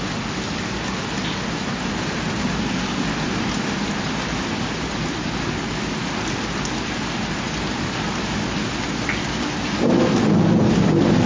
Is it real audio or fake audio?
real